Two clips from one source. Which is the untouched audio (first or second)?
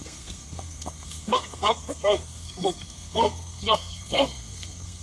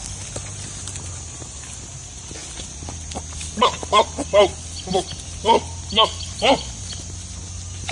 second